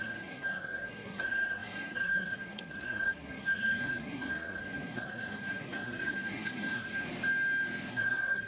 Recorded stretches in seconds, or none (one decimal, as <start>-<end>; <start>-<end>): 7.0-7.9